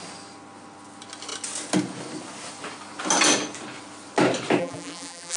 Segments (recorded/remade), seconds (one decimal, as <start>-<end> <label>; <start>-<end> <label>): 0.0-4.6 recorded; 4.6-5.4 remade